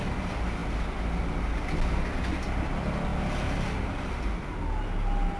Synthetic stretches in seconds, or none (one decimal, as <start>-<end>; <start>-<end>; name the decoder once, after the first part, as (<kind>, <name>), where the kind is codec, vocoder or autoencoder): 3.1-4.2 (vocoder, BigVGAN v2)